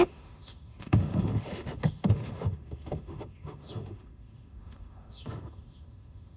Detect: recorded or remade remade